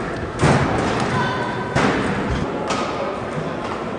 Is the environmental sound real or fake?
real